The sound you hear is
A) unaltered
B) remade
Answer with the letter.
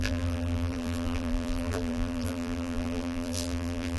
B